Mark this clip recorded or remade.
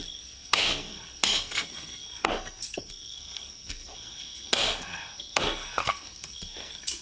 remade